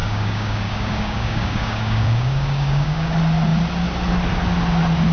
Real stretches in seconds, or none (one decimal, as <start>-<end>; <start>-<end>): 3.1-5.1